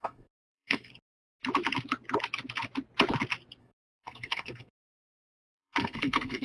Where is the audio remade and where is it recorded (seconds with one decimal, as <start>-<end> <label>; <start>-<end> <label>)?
0.0-0.9 remade; 0.9-3.6 recorded; 3.6-6.4 remade